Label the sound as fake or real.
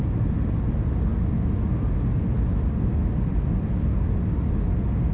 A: real